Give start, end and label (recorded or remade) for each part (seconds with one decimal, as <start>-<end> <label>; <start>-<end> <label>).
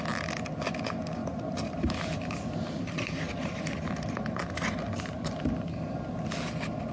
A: 0.0-1.2 recorded; 1.2-5.3 remade; 5.3-6.9 recorded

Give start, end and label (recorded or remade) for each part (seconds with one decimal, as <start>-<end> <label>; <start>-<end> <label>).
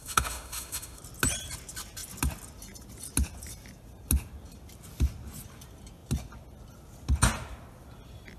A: 0.0-1.0 remade; 1.0-8.4 recorded